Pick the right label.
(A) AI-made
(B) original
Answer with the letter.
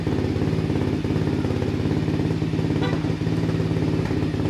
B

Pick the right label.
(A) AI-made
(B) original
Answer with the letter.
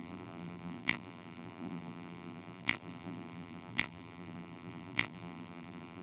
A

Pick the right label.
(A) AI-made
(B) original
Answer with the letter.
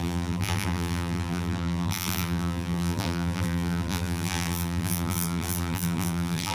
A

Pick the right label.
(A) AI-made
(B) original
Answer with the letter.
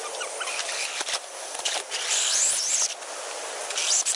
B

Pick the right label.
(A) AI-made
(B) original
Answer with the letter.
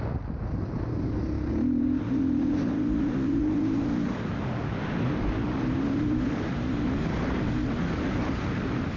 B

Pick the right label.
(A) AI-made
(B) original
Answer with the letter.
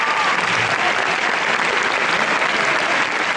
B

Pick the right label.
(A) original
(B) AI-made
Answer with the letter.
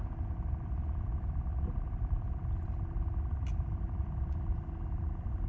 A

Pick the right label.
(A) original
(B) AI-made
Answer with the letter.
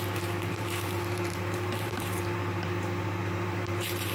B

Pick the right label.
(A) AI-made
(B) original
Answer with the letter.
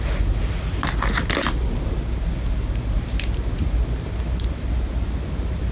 B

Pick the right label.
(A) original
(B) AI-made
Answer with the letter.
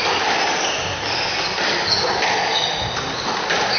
A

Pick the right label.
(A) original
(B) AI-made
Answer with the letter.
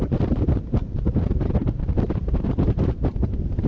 B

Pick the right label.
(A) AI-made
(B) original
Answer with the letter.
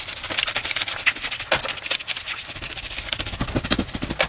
B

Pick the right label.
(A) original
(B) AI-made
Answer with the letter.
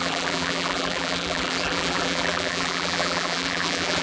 B